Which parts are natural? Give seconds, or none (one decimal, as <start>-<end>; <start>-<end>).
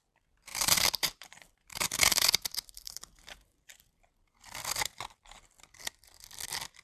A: 0.0-0.5; 4.3-6.8